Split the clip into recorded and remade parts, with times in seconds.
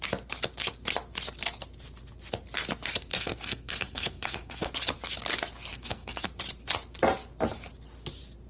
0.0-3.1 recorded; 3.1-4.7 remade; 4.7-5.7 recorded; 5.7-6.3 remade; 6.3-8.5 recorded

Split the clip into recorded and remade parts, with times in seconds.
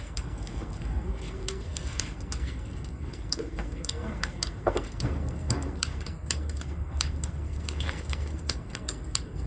0.0-9.5 remade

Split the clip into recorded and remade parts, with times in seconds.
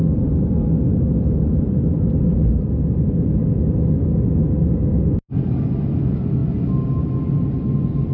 0.0-8.1 recorded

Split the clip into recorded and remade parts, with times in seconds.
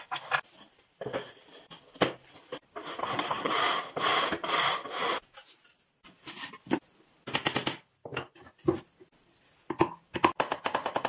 0.0-3.0 recorded; 3.0-3.5 remade; 3.5-11.1 recorded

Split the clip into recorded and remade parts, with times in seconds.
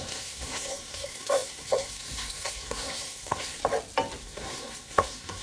0.0-3.6 remade; 3.6-4.2 recorded; 4.2-5.4 remade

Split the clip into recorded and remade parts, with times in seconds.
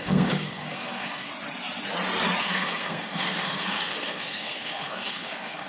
0.0-1.3 remade; 1.3-2.4 recorded; 2.4-5.7 remade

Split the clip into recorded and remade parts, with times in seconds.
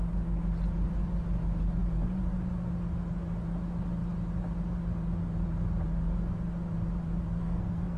0.0-7.4 recorded; 7.4-8.0 remade